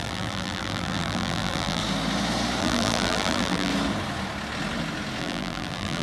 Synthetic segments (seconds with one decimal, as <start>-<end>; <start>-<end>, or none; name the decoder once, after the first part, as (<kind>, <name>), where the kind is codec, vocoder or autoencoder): 0.0-1.8 (vocoder, BigVGAN v2); 2.6-3.7; 5.2-6.0